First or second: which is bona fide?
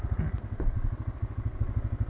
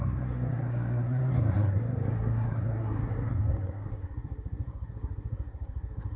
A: first